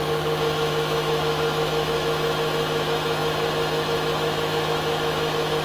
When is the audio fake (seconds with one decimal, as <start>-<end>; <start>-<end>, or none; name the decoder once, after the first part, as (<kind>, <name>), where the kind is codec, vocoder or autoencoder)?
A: 0.0-5.6 (autoencoder, DAC-VAE)